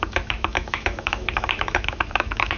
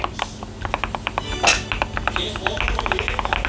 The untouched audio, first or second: second